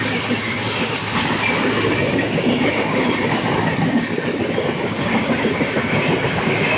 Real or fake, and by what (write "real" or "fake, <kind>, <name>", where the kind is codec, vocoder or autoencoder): fake, codec, DAC